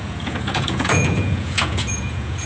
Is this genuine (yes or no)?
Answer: no